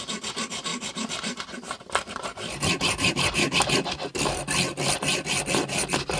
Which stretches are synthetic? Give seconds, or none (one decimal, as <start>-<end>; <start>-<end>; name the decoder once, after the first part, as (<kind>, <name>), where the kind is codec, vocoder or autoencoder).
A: 0.7-4.4 (vocoder, BigVGAN v2)